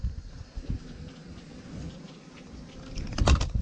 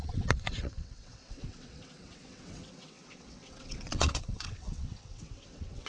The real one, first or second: first